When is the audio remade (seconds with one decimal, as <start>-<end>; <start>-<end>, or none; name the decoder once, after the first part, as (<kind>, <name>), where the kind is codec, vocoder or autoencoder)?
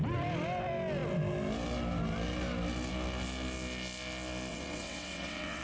4.5-5.6 (vocoder, WaveNeXt)